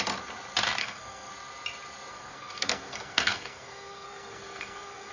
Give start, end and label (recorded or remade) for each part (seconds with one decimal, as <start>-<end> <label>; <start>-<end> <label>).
0.0-0.8 recorded; 0.8-1.3 remade; 1.3-2.1 recorded; 2.1-5.1 remade